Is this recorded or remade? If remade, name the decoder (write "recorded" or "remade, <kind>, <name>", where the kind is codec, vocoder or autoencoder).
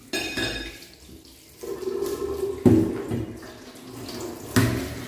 recorded